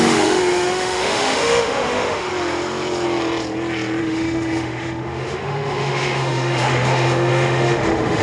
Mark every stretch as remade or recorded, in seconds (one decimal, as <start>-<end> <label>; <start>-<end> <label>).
0.0-2.3 remade; 2.3-4.0 recorded; 4.0-8.2 remade